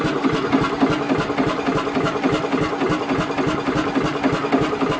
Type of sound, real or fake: real